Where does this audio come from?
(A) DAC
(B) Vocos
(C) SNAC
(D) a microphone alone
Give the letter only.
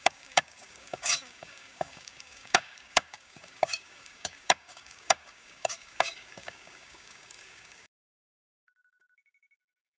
A